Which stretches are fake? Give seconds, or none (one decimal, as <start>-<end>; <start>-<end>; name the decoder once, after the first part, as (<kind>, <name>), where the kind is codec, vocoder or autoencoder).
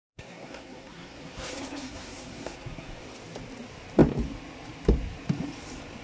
0.0-3.0 (codec, SNAC)